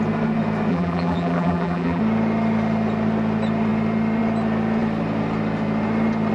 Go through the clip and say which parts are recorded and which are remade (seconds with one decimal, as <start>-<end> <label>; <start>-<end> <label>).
0.0-0.7 recorded; 0.7-2.0 remade; 2.0-6.3 recorded